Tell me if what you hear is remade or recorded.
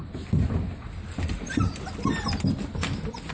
recorded